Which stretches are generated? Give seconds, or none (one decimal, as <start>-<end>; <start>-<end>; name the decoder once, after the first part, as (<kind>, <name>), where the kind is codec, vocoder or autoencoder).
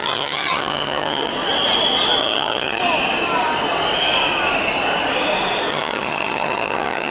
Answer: 0.0-1.3 (vocoder, HiFi-GAN); 2.2-2.8; 5.7-7.1